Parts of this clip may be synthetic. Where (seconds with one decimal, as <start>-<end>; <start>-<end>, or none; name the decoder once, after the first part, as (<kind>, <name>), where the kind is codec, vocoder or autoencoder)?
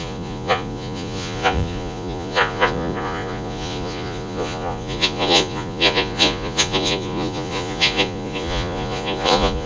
0.0-9.7 (vocoder, Vocos)